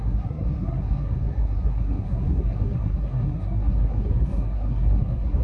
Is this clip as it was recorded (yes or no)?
no